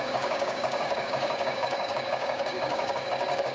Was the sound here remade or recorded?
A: remade